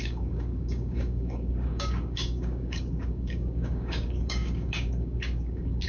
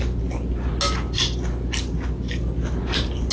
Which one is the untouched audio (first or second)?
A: second